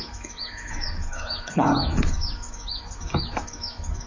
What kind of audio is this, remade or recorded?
remade